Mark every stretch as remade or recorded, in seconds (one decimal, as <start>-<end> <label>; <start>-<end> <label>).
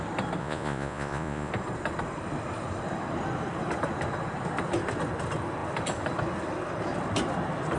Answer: 0.0-0.4 recorded; 0.4-1.5 remade; 1.5-7.8 recorded